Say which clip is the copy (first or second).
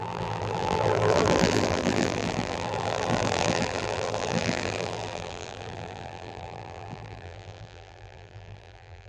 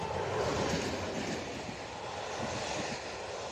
first